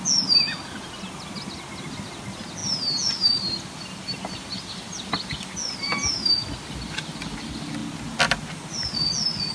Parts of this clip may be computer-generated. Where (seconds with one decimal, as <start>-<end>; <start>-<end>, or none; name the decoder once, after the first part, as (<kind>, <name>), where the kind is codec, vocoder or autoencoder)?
none